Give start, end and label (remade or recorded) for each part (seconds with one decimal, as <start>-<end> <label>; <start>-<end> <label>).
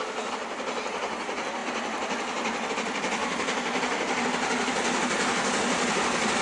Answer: 0.0-3.2 recorded; 3.2-4.2 remade; 4.2-6.4 recorded